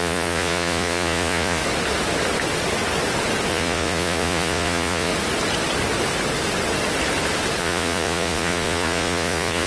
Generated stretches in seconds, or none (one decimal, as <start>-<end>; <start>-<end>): 0.0-1.6; 3.5-5.1; 7.6-9.7